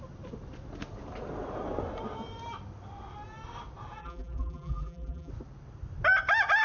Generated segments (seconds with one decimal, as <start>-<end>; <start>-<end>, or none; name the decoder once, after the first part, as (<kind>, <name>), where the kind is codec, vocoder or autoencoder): 4.0-5.3 (vocoder, BigVGAN v2)